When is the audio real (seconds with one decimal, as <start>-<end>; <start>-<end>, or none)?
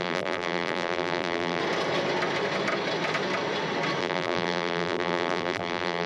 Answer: 1.6-4.0